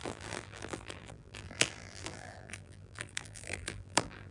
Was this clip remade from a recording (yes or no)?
yes